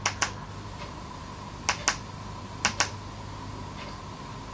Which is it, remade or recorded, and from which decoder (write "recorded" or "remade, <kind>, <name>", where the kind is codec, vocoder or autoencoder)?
recorded